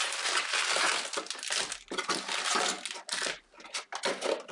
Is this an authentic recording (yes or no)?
yes